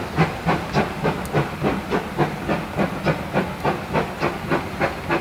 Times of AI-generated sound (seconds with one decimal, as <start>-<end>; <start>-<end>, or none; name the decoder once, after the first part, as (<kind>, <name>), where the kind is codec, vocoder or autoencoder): 0.0-2.0 (vocoder, BigVGAN v2)